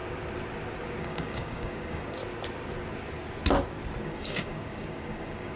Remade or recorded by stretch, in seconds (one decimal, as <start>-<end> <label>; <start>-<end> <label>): 0.0-1.0 recorded; 1.0-2.2 remade; 2.2-4.0 recorded; 4.0-5.6 remade